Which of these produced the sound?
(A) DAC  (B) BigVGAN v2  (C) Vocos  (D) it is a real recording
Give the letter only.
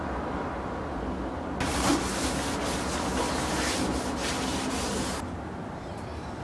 D